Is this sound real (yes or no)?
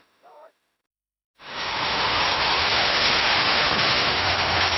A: no